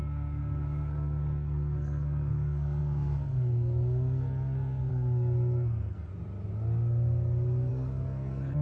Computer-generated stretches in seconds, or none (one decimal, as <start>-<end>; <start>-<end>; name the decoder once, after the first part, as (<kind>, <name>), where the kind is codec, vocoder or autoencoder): 0.0-6.1 (codec, SNAC); 7.7-8.6